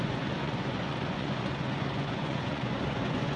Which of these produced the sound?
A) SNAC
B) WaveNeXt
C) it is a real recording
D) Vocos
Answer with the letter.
D